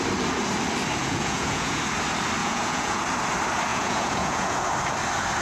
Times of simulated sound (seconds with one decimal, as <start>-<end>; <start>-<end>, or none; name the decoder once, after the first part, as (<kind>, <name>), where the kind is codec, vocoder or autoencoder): 1.0-1.8 (vocoder, Vocos); 2.4-3.0; 3.7-4.6